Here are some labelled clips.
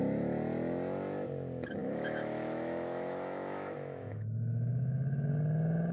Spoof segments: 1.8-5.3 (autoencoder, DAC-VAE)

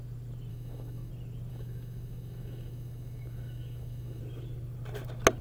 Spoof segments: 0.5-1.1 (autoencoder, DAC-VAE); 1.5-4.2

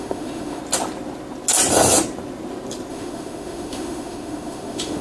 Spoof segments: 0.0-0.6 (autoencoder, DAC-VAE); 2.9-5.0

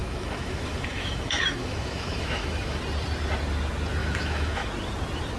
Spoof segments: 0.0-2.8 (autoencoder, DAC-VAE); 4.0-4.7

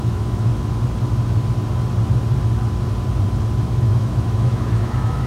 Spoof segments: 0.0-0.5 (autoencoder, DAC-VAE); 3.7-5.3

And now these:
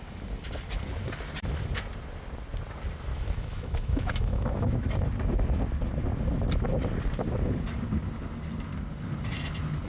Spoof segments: 3.1-4.9 (autoencoder, DAC-VAE)

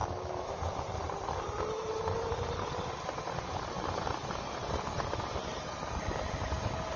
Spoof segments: 0.0-0.6 (autoencoder, DAC-VAE)

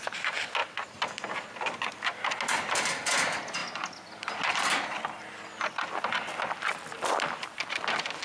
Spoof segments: none